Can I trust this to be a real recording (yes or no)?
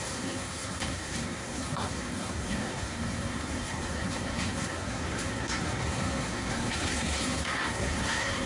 no